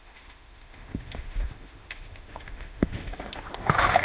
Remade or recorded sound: remade